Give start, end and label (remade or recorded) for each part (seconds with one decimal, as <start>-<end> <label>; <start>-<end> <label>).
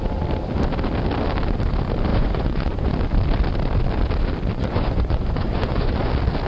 0.0-2.1 recorded; 2.1-2.9 remade; 2.9-4.5 recorded; 4.5-6.1 remade; 6.1-6.5 recorded